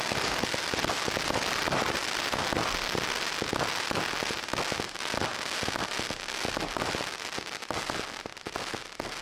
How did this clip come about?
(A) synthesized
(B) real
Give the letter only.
B